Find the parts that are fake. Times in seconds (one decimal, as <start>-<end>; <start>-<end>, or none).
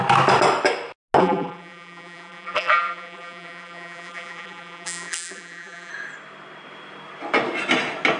1.2-5.9